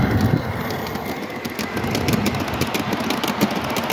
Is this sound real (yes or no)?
yes